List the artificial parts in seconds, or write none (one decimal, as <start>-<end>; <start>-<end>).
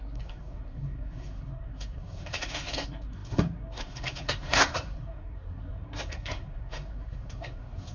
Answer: 0.0-7.9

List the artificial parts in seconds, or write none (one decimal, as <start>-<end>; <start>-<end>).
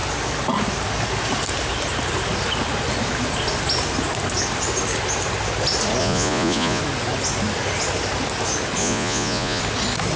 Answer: 6.0-6.8; 8.8-9.6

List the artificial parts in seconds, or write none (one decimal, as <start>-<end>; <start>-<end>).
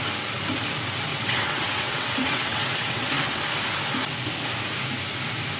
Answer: 1.1-3.4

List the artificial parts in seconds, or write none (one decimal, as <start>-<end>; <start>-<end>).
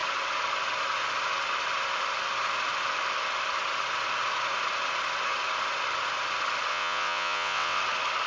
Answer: 6.7-7.8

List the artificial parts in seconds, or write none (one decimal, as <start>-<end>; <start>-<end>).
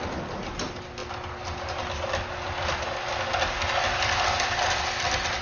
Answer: none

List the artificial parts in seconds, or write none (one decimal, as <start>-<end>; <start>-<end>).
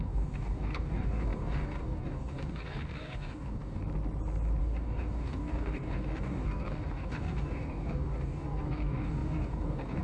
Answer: 0.0-3.8; 4.6-10.0